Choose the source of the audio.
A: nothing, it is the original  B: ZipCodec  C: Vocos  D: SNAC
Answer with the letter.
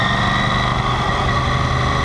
A